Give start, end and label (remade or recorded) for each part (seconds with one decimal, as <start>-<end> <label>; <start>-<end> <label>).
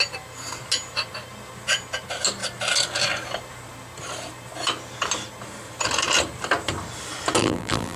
0.0-7.4 recorded; 7.4-8.0 remade